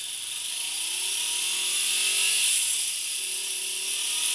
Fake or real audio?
real